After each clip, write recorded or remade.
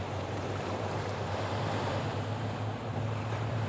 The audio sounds remade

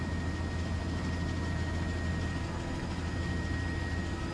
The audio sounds recorded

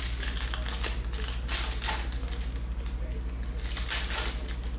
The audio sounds recorded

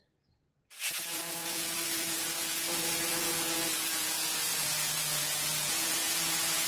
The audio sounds remade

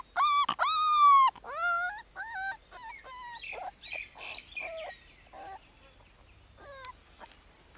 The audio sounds recorded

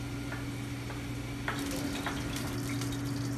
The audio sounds recorded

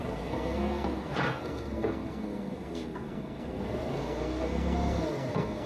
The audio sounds remade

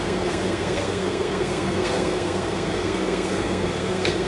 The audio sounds remade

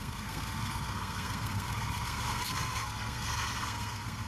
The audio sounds remade